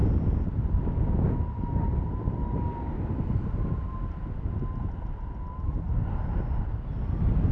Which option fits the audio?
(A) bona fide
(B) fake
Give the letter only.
A